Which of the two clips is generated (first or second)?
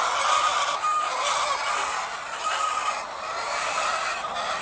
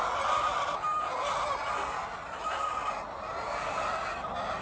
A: first